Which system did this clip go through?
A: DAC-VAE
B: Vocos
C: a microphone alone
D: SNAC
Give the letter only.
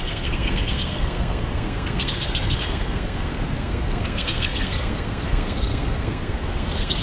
D